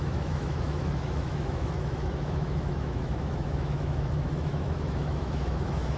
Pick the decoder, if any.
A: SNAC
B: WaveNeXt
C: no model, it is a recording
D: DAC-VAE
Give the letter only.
D